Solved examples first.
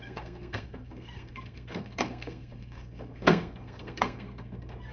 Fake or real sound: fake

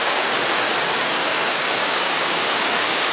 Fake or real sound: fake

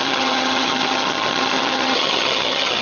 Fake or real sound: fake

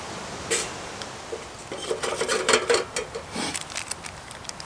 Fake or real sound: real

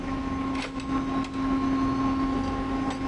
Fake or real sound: real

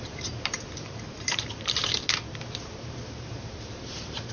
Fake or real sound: fake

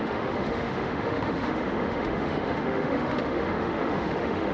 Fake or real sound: fake